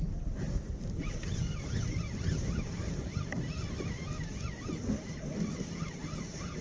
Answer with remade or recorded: recorded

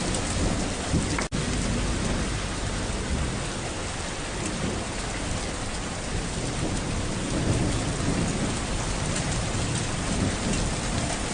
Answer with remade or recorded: recorded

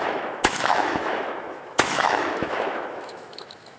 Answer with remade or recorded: remade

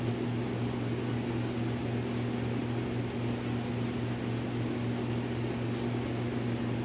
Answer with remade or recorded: recorded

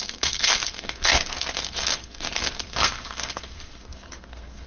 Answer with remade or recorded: remade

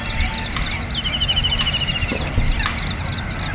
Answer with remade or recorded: recorded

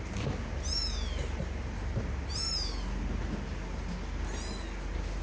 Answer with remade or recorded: recorded